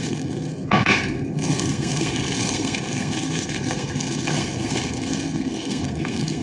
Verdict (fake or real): fake